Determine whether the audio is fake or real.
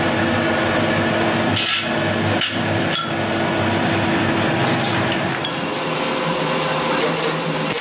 real